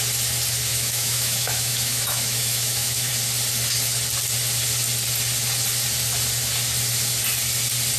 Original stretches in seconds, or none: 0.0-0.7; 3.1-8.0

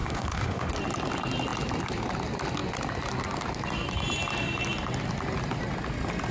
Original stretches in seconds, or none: 0.7-6.3

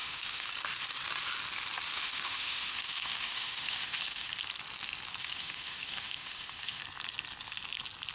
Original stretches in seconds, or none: 0.5-1.9; 4.3-5.2; 6.8-8.1